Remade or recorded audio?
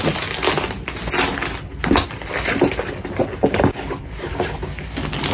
recorded